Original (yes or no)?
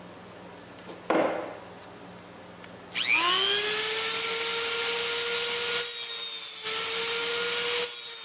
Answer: yes